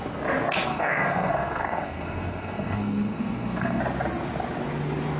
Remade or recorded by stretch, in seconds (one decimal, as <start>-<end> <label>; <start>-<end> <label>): 0.0-0.7 recorded; 0.7-3.8 remade; 3.8-5.2 recorded